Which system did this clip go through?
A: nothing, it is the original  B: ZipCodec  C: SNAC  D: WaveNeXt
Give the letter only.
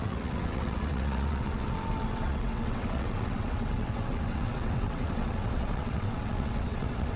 D